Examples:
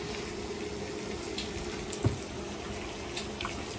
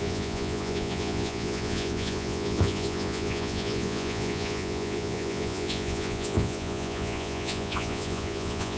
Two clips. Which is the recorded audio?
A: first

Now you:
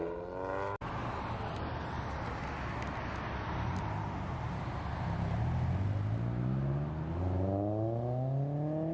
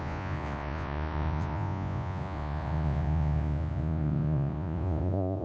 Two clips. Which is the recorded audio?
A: first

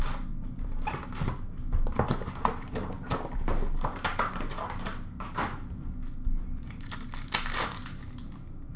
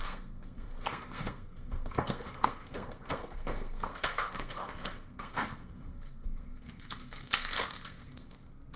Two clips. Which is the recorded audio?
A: first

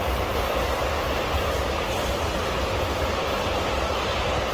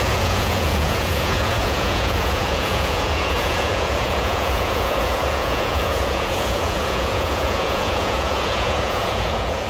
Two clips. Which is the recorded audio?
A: first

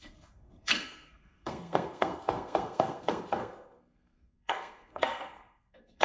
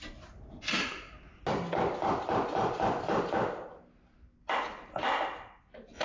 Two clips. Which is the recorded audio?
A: second